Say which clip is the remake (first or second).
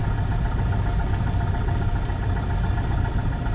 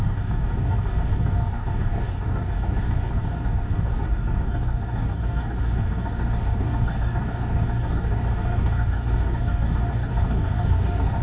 second